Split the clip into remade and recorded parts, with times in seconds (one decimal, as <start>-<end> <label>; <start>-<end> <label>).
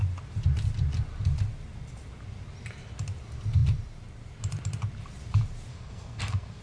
0.0-5.7 recorded; 5.7-6.6 remade